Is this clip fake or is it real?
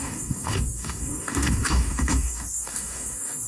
fake